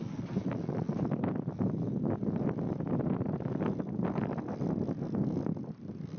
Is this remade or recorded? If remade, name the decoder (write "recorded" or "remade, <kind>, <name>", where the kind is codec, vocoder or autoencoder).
recorded